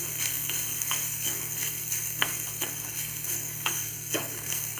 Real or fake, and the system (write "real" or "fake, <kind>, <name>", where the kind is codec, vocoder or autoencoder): fake, codec, SNAC